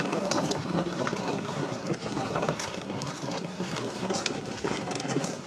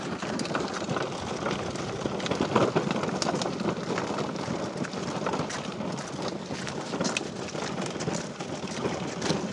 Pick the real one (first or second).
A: second